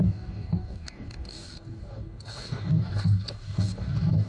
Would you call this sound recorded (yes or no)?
no